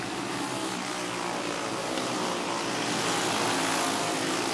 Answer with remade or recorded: recorded